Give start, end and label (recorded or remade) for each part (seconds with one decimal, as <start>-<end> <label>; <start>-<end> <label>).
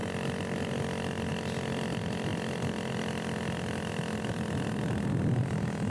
0.0-5.9 recorded